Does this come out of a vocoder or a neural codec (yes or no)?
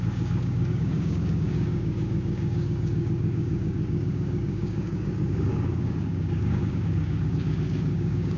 yes